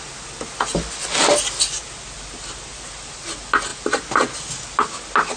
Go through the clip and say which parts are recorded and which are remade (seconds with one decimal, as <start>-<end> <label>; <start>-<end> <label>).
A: 0.0-5.4 recorded